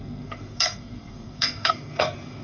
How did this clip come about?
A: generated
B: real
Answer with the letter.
A